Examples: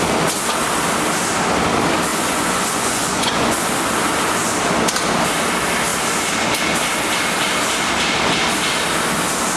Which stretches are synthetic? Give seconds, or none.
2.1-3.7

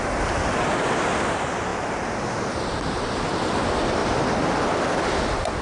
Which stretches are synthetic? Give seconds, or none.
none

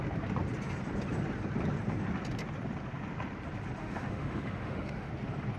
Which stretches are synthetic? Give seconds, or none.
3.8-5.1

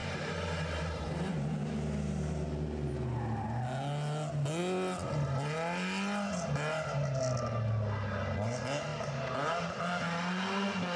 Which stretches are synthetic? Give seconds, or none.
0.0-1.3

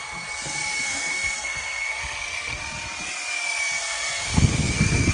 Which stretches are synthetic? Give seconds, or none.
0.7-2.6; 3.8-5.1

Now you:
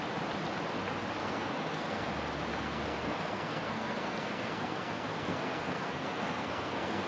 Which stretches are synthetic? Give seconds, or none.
1.2-2.1; 2.5-7.1

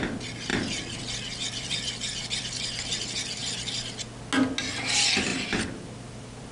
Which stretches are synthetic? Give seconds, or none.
0.5-3.0; 5.3-6.5

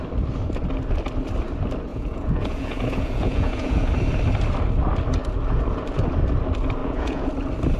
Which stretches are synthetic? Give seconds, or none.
1.9-3.9; 6.8-7.3